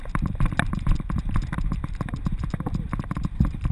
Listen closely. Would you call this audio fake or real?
fake